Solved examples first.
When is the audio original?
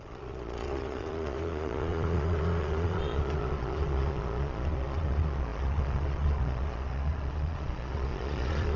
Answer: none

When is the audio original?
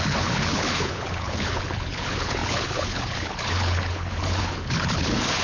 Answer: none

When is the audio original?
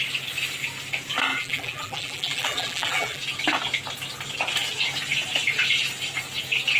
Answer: 0.0-1.3; 3.2-6.8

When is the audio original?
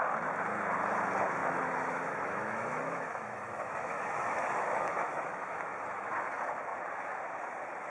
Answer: 0.0-1.4; 6.1-7.9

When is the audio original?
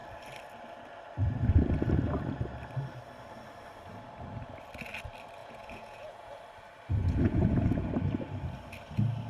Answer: 0.0-5.4; 6.4-7.0; 7.9-9.3